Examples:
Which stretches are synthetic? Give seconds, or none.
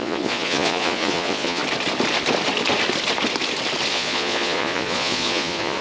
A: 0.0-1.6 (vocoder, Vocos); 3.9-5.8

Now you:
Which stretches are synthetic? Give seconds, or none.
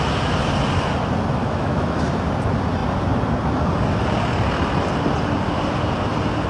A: 1.4-2.0 (autoencoder, DAC-VAE)